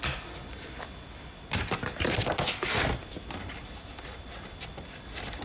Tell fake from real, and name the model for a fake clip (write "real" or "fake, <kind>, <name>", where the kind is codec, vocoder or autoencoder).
real